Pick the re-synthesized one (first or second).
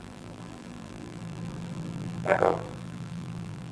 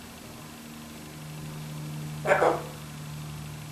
first